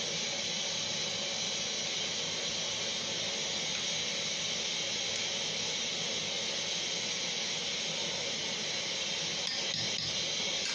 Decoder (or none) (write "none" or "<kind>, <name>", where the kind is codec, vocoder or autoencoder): none